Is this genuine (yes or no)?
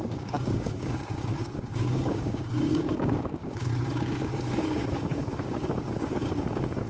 no